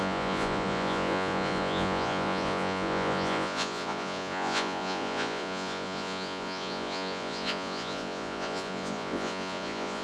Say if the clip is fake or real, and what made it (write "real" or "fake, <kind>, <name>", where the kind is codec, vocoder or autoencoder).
fake, vocoder, Vocos